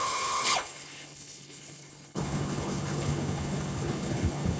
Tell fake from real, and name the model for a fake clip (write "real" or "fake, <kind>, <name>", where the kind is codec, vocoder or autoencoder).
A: fake, codec, HILCodec